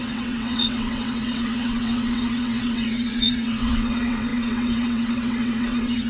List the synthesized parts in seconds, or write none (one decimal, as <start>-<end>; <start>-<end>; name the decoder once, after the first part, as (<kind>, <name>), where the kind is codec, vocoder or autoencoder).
0.0-6.1 (vocoder, WaveNeXt)